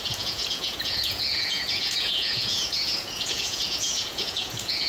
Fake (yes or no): yes